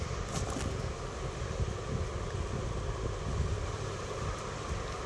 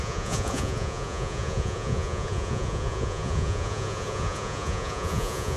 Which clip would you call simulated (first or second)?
second